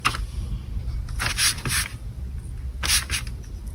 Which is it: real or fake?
real